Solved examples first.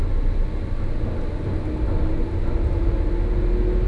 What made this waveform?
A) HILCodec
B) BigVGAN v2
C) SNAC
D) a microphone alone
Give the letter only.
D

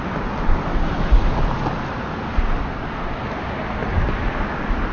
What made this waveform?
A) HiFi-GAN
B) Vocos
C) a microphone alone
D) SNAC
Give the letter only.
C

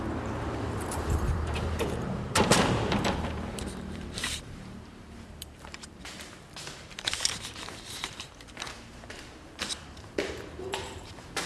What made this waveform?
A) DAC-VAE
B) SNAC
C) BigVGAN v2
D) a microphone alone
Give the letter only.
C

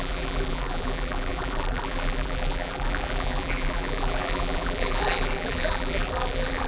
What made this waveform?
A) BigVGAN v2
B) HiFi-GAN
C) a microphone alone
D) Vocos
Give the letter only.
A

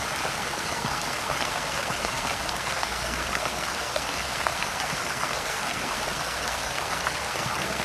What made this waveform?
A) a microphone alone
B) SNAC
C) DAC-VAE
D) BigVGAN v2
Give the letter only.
B